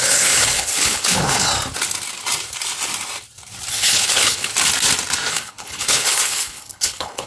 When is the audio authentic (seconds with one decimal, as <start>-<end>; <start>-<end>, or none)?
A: 1.5-3.7; 4.5-5.3